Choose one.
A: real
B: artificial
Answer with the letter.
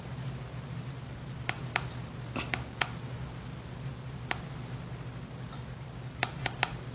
A